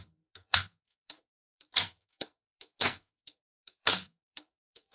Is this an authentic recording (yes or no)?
no